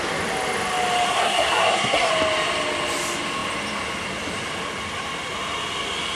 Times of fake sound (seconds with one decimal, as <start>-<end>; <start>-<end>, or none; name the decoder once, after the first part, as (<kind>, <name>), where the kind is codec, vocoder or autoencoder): 1.1-2.1 (codec, SNAC)